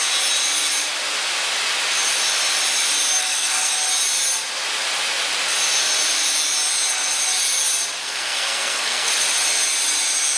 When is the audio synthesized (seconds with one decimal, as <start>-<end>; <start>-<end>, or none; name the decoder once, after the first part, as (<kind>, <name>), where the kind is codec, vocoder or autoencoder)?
3.2-3.7 (codec, SNAC); 8.0-9.1